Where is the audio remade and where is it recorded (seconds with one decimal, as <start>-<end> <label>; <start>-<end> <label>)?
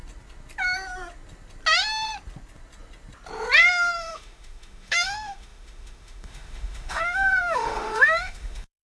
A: 0.0-3.7 recorded; 3.7-8.8 remade